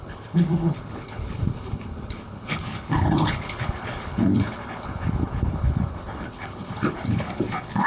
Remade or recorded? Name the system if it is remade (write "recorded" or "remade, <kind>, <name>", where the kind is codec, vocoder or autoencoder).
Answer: remade, codec, HILCodec